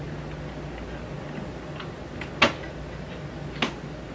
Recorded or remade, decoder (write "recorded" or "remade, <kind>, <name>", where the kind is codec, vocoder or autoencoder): recorded